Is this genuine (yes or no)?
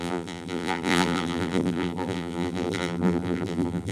no